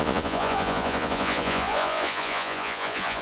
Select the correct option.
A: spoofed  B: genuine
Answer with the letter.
A